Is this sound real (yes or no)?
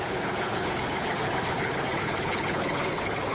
no